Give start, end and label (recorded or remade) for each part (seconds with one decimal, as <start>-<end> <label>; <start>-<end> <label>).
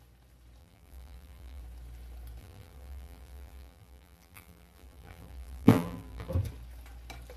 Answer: 0.0-0.6 recorded; 0.6-1.6 remade; 1.6-2.4 recorded; 2.4-6.3 remade; 6.3-7.4 recorded